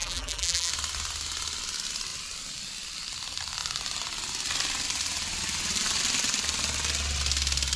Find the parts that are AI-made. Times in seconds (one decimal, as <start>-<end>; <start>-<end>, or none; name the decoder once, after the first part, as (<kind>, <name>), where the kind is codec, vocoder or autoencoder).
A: 0.0-0.7 (vocoder, BigVGAN v2)